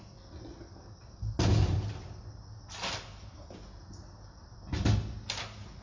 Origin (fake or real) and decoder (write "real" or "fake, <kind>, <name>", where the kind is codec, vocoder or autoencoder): real